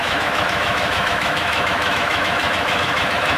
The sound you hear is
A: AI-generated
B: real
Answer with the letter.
A